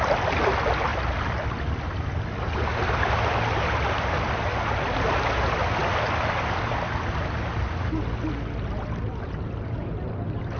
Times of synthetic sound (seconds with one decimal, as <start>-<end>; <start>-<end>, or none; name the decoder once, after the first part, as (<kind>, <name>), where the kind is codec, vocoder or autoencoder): none